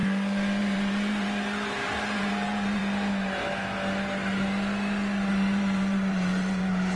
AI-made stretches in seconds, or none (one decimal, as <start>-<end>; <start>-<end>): 0.6-2.8; 5.3-7.0